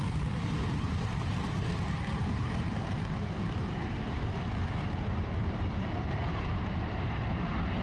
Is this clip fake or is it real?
fake